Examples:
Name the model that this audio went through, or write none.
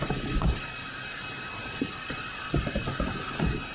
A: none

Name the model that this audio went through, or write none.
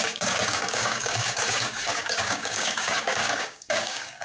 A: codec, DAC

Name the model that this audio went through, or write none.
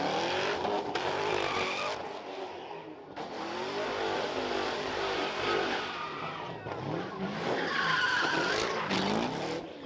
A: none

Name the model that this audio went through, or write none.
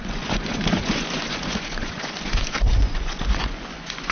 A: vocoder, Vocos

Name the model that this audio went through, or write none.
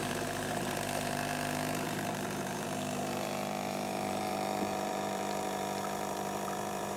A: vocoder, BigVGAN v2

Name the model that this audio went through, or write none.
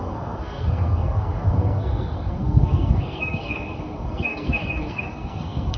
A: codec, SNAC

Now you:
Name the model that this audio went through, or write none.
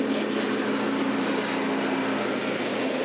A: none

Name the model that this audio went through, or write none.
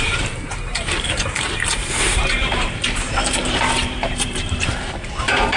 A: vocoder, BigVGAN v2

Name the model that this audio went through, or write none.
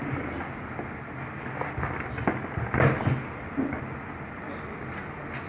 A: none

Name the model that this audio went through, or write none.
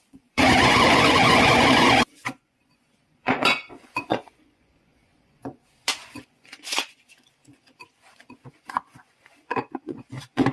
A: vocoder, Vocos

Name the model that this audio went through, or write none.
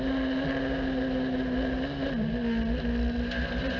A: none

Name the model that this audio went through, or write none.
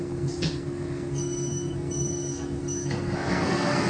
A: codec, SNAC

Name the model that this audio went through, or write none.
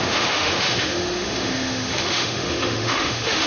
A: autoencoder, DAC-VAE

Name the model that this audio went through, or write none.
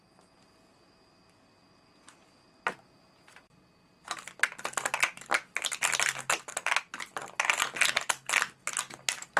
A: none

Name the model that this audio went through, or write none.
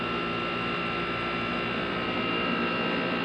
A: none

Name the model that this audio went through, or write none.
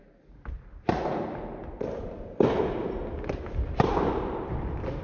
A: none